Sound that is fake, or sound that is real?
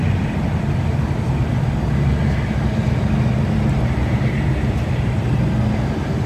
real